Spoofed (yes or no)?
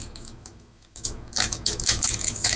yes